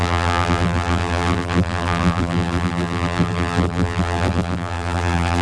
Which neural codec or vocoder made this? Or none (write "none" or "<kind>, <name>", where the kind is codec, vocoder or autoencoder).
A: vocoder, BigVGAN v2